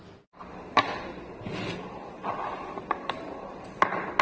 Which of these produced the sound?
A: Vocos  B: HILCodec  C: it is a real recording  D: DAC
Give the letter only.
C